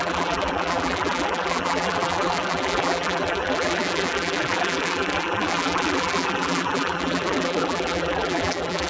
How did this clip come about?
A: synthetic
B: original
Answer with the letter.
A